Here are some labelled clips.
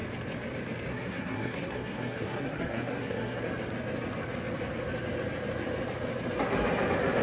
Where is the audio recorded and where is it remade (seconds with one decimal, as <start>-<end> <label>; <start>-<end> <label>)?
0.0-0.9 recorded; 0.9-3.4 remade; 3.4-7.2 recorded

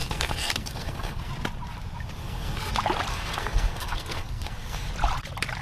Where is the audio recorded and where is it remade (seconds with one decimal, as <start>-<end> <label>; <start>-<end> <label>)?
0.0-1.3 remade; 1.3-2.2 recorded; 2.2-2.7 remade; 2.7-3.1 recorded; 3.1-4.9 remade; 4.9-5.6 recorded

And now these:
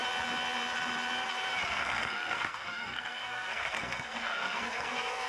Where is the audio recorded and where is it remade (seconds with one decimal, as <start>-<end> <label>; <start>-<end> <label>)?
0.0-1.7 recorded; 1.7-5.3 remade

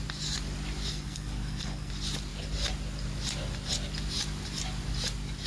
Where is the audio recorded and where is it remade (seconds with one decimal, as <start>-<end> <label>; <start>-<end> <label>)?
0.0-0.9 recorded; 0.9-1.9 remade; 1.9-5.5 recorded

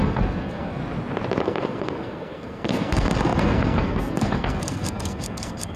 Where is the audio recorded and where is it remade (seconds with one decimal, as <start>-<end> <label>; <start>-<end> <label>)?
0.0-0.8 remade; 0.8-1.4 recorded; 1.4-5.8 remade